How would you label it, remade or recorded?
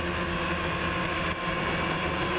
recorded